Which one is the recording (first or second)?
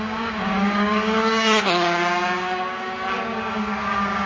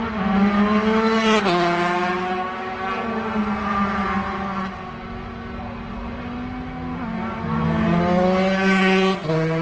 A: second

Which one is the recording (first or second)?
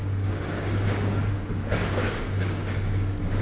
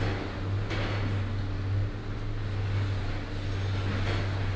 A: second